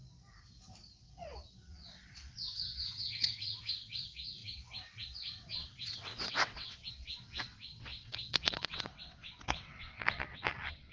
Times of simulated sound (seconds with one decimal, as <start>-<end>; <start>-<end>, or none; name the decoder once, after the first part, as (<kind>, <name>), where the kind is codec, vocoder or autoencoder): 1.0-10.9 (vocoder, WaveNeXt)